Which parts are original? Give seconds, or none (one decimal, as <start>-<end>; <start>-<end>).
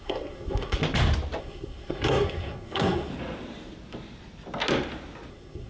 0.8-1.4; 3.1-5.3